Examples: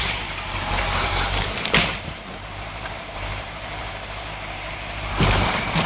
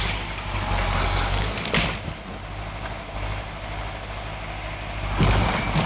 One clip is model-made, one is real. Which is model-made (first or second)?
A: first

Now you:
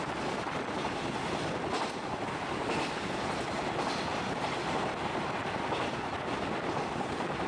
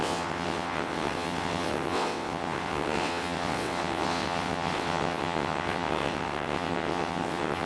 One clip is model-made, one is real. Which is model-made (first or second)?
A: second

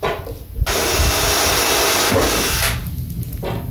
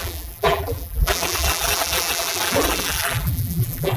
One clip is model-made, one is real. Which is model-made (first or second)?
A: second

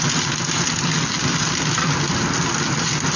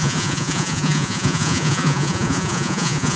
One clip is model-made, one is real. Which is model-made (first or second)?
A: second